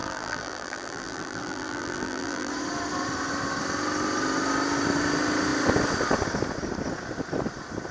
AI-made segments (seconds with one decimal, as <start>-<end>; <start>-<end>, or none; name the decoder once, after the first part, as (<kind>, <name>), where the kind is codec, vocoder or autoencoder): 0.0-2.5 (vocoder, BigVGAN v2)